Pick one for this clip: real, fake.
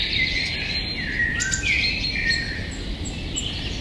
real